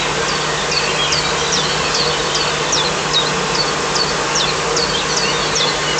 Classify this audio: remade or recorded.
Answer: recorded